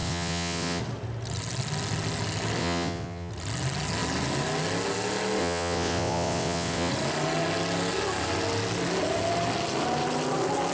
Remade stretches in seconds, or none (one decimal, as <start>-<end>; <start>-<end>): 0.0-0.8; 2.6-3.3; 5.4-6.9

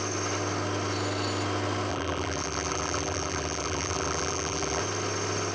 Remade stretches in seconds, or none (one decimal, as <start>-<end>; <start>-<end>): 1.9-4.8

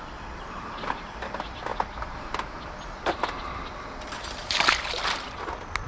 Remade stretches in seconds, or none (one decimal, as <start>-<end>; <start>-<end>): none

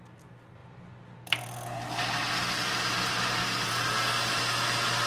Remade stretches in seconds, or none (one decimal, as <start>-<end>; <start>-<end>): none

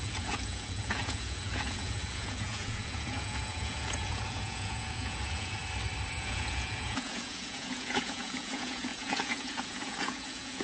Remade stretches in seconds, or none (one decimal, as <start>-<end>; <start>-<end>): 0.0-5.6; 6.1-10.6

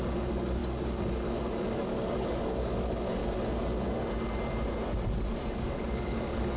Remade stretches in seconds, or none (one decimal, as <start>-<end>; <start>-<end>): 0.0-3.2; 5.5-6.6

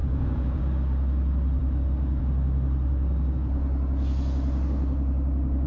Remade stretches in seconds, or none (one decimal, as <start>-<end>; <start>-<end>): 0.0-0.6

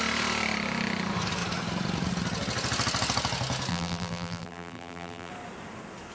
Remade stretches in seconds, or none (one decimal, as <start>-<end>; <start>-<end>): 3.7-5.3